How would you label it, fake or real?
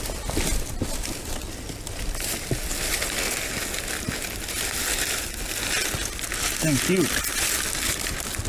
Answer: real